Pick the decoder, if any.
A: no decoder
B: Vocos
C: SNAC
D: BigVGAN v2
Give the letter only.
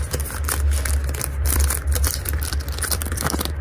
D